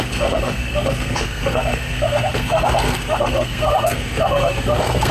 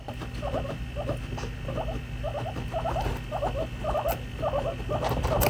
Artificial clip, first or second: first